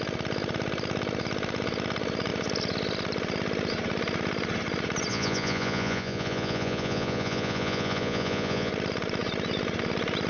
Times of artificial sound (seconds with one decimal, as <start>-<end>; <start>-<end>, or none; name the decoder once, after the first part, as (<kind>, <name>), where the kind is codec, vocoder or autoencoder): 5.1-8.7 (vocoder, Vocos)